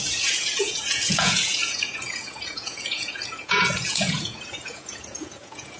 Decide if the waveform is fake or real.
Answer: fake